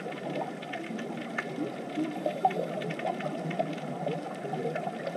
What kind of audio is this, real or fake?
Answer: real